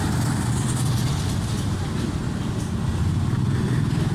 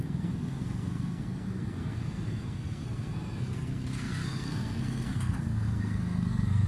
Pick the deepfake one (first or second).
second